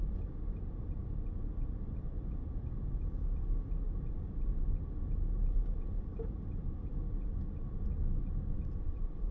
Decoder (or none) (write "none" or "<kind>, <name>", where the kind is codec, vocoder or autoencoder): vocoder, BigVGAN v2